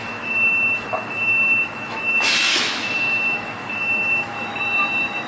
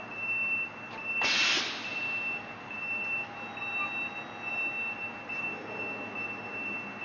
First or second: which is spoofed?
first